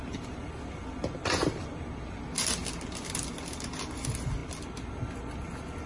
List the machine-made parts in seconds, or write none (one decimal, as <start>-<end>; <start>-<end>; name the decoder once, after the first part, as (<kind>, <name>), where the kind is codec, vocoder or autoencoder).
none